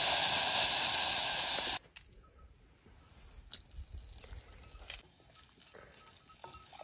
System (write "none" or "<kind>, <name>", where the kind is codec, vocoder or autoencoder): none